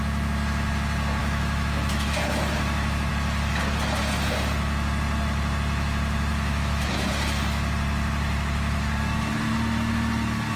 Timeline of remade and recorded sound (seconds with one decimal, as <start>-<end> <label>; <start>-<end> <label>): 0.0-1.2 recorded; 1.2-3.1 remade; 3.1-6.3 recorded; 6.3-7.1 remade; 7.1-10.6 recorded